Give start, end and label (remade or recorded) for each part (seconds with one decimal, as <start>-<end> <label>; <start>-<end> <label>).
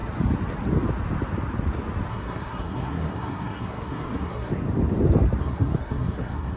0.0-2.1 recorded; 2.1-4.5 remade; 4.5-5.4 recorded; 5.4-6.6 remade